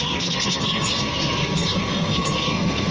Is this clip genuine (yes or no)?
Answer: no